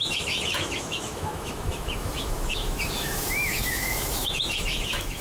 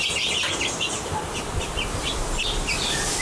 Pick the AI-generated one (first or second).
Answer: first